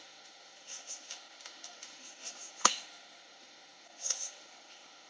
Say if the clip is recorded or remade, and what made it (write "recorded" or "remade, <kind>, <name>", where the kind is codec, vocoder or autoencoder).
remade, autoencoder, DAC-VAE